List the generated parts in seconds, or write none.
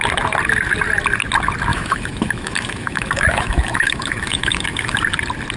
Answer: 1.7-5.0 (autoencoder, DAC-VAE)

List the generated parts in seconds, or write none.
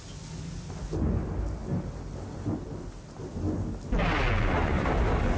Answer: none